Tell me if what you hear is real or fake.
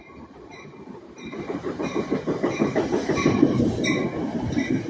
fake